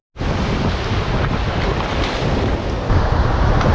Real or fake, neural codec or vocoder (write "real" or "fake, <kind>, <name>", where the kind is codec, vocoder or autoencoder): real